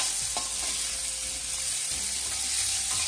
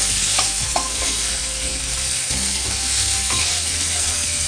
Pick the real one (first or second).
first